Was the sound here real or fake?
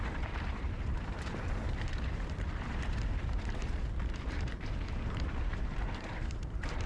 fake